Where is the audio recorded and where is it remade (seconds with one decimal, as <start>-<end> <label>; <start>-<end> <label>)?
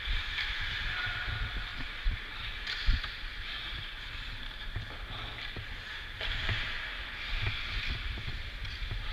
0.0-1.7 recorded; 1.7-2.2 remade; 2.2-5.9 recorded; 5.9-6.5 remade; 6.5-9.1 recorded